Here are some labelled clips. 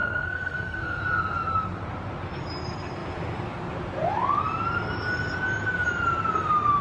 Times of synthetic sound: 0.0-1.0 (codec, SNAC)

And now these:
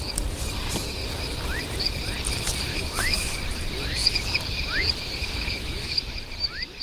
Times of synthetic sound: 2.7-3.4 (autoencoder, DAC-VAE); 5.2-6.0

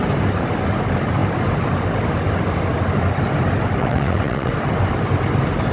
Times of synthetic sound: 3.8-4.5 (vocoder, WaveNeXt)

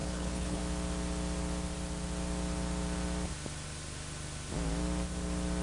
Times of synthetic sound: 0.0-0.6 (codec, HILCodec)

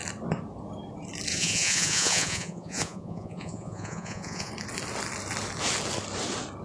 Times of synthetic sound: 1.3-4.5 (vocoder, Vocos)

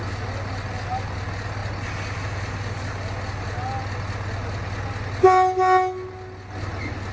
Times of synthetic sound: none

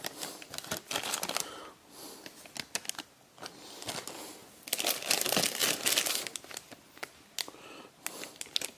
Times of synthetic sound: none

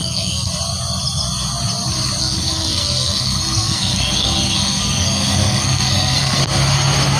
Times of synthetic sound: 0.0-0.5 (codec, SNAC); 2.2-6.4